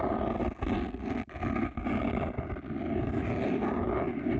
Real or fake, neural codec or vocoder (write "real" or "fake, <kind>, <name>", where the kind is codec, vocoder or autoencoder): real